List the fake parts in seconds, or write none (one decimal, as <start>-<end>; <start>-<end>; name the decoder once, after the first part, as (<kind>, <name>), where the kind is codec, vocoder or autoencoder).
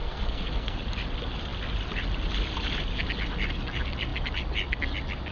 0.0-0.8 (codec, SNAC)